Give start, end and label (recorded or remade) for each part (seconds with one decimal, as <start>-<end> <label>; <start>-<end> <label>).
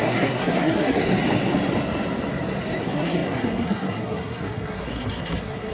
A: 0.0-1.0 remade; 1.0-2.8 recorded; 2.8-5.7 remade